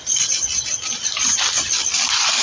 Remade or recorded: recorded